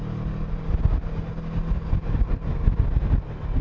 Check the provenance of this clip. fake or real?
real